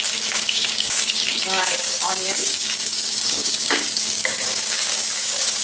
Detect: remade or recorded remade